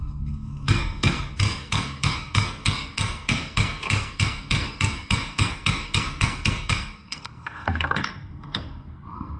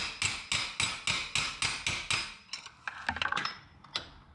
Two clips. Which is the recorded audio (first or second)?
second